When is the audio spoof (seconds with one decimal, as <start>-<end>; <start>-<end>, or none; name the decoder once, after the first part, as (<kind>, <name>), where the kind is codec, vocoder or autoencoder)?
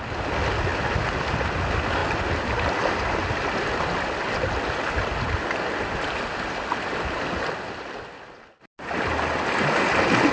none